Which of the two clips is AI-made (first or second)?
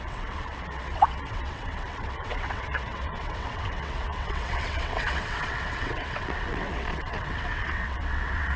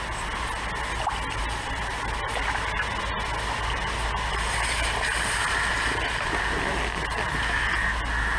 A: first